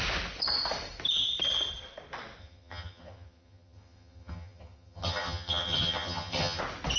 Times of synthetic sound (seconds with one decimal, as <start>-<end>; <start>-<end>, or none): 2.4-6.6